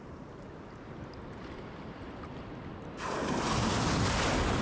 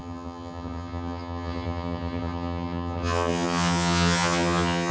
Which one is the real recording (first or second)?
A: first